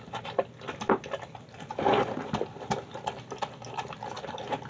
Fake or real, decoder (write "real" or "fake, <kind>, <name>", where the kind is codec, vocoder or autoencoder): real